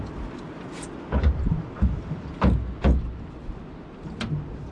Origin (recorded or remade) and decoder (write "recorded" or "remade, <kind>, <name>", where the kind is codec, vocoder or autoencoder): recorded